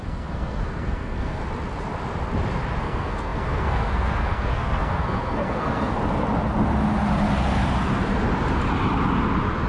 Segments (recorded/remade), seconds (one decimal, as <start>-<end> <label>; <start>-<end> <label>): 0.0-1.4 remade; 1.4-2.8 recorded; 2.8-5.9 remade; 5.9-9.7 recorded